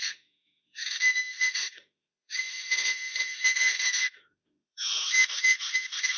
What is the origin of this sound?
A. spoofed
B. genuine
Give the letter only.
A